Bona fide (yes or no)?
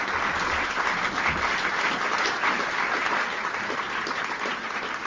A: yes